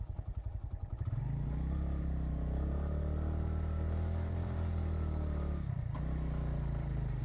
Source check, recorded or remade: remade